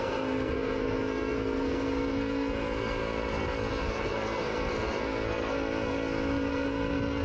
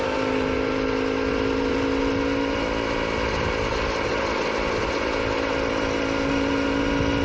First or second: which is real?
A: second